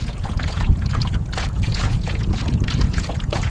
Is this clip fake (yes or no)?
yes